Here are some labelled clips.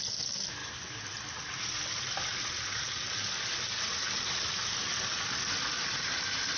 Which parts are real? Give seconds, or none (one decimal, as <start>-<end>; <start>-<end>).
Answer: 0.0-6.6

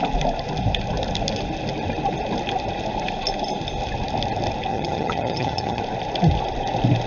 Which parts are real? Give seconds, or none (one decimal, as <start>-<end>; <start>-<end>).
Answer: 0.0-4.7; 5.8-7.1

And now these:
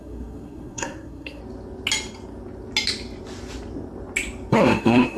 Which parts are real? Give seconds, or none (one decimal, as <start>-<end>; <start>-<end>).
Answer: 1.4-4.5